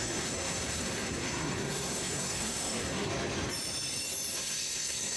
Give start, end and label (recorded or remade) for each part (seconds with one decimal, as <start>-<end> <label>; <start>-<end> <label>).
0.0-3.1 remade; 3.1-4.3 recorded; 4.3-5.2 remade